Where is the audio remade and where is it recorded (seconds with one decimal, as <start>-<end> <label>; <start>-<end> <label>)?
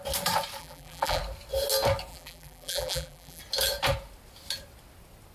0.0-0.6 recorded; 0.6-1.2 remade; 1.2-2.1 recorded; 2.1-3.4 remade; 3.4-5.3 recorded